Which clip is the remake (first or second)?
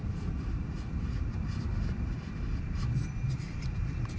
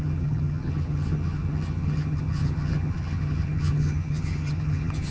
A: second